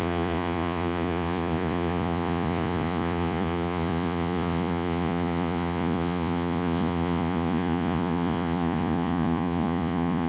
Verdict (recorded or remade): remade